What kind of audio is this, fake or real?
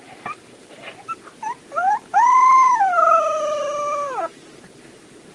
fake